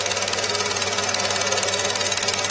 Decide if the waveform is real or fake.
real